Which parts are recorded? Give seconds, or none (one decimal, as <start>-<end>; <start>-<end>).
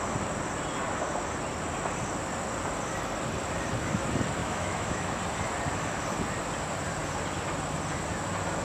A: 0.0-4.4; 5.2-8.6